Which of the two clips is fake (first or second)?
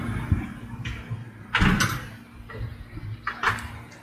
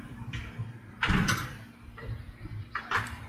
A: second